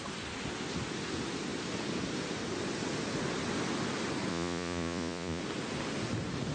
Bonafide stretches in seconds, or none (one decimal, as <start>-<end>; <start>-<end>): 0.0-4.3; 5.4-6.5